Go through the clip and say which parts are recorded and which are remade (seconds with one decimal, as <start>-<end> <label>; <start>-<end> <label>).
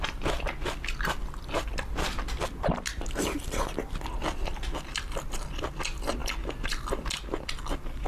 0.0-8.1 recorded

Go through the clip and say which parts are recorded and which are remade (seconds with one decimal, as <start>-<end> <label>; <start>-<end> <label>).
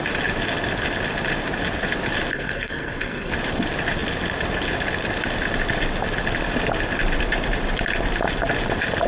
0.0-2.3 recorded; 2.3-3.3 remade; 3.3-9.1 recorded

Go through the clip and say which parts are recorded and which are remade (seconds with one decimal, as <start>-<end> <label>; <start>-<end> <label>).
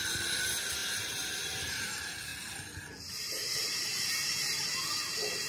0.0-2.3 remade; 2.3-3.0 recorded; 3.0-5.5 remade